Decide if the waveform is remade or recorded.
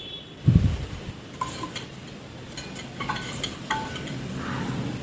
recorded